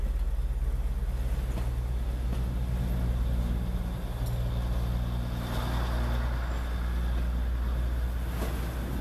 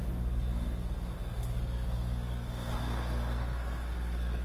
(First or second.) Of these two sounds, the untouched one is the first